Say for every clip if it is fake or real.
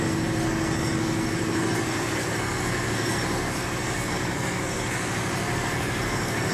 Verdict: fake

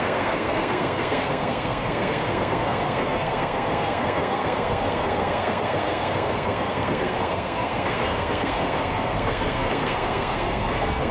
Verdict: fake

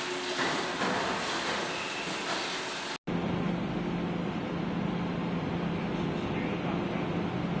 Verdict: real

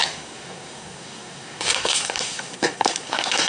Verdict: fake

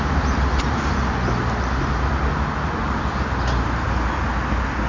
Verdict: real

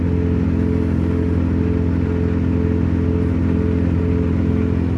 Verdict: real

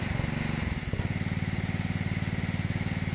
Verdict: real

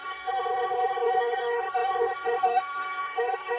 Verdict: fake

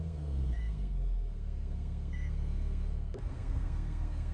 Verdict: fake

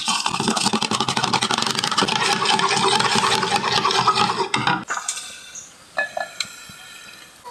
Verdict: real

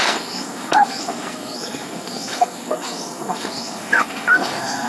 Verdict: fake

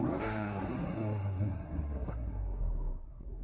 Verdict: fake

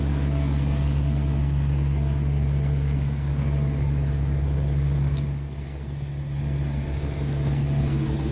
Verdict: fake